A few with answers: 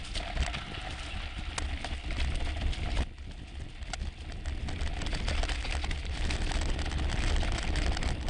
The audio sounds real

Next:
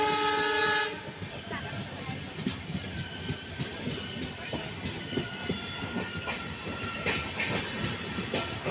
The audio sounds real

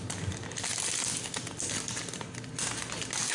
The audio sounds real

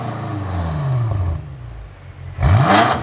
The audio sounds real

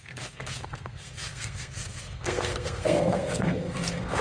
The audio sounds fake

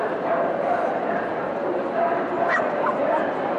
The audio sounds real